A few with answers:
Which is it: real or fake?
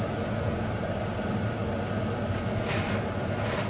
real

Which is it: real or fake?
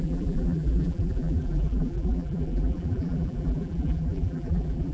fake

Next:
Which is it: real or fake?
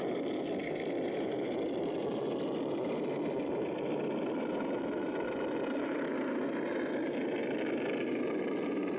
fake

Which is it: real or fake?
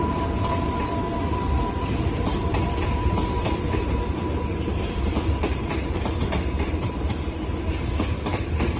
fake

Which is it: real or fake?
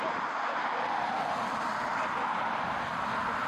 real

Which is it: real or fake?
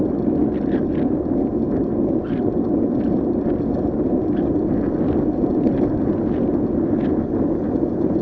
real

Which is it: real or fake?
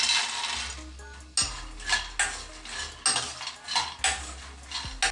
real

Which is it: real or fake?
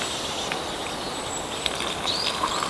fake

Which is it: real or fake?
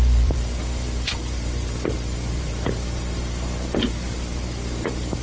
fake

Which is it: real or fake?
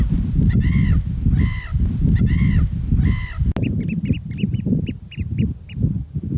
real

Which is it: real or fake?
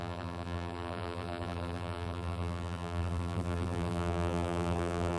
fake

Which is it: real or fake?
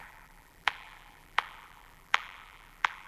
fake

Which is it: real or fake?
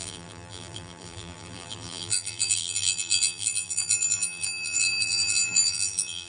fake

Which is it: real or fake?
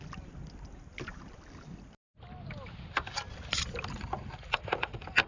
real